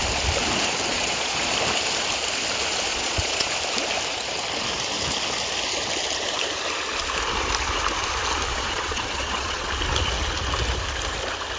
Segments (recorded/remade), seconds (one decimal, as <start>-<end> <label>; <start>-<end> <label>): 0.0-0.9 recorded; 0.9-1.5 remade; 1.5-2.9 recorded; 2.9-3.5 remade; 3.5-8.5 recorded; 8.5-9.7 remade; 9.7-11.6 recorded